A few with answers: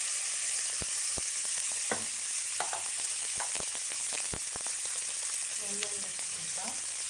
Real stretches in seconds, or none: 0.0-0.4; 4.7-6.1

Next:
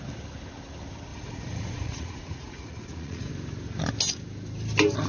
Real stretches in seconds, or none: 0.0-1.1; 3.3-5.1

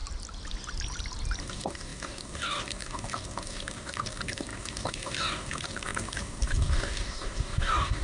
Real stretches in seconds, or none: 0.0-1.4

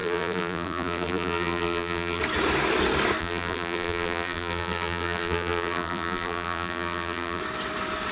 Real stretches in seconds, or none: 2.2-3.2; 7.4-8.1